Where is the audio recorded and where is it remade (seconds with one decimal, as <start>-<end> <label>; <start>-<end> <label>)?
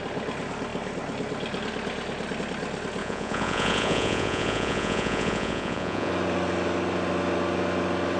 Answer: 0.0-3.0 recorded; 3.0-6.1 remade; 6.1-8.2 recorded